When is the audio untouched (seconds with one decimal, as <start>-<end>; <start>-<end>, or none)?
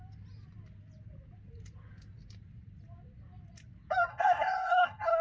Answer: 0.0-4.1